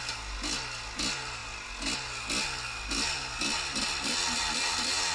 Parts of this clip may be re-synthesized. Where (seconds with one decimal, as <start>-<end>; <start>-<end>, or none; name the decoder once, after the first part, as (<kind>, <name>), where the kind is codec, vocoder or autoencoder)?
none